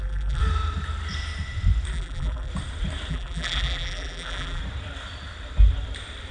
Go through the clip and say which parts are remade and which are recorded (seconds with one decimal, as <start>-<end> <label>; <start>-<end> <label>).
0.0-0.4 remade; 0.4-1.9 recorded; 1.9-2.5 remade; 2.5-3.1 recorded; 3.1-4.6 remade; 4.6-6.3 recorded